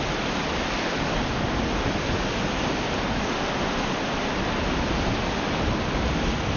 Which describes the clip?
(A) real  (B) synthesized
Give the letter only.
A